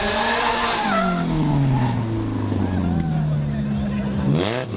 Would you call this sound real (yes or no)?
yes